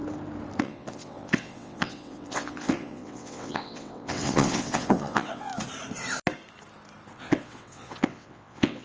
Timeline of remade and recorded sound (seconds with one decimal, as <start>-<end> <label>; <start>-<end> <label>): 0.0-0.6 recorded; 0.6-5.5 remade; 5.5-7.2 recorded; 7.2-8.8 remade